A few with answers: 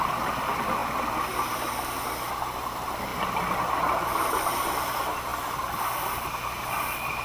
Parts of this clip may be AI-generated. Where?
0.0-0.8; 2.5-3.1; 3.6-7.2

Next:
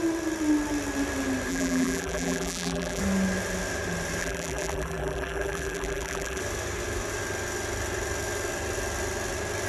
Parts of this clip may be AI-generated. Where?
1.5-3.0; 4.2-6.4

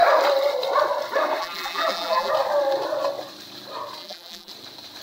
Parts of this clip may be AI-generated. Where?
1.4-2.3; 4.0-4.5

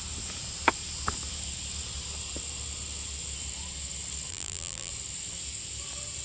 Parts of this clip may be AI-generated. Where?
4.3-4.9